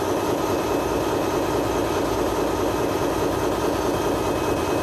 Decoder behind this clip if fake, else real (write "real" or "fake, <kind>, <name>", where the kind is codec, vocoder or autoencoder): real